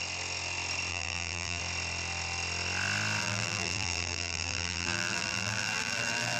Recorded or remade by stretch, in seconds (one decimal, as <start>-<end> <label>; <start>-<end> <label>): 0.0-0.9 recorded; 0.9-1.6 remade; 1.6-3.2 recorded; 3.2-6.4 remade

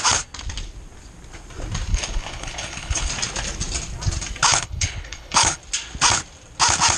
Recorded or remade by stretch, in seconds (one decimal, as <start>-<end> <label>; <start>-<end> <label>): 0.0-1.9 recorded; 1.9-3.1 remade; 3.1-4.5 recorded; 4.5-5.6 remade; 5.6-7.0 recorded

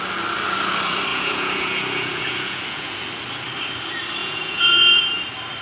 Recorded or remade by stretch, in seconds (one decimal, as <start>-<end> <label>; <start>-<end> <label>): 0.0-1.1 recorded; 1.1-3.0 remade; 3.0-4.2 recorded; 4.2-5.0 remade; 5.0-5.6 recorded

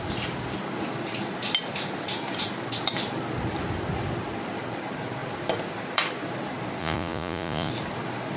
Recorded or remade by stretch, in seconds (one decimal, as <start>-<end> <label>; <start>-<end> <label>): 0.0-6.8 recorded; 6.8-7.7 remade; 7.7-8.4 recorded